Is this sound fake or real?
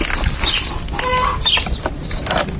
real